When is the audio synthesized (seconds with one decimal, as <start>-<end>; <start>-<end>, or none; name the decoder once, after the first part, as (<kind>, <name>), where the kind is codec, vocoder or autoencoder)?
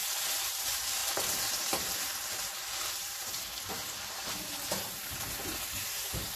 0.6-6.4 (vocoder, BigVGAN v2)